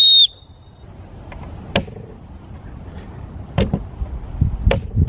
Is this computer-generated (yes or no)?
no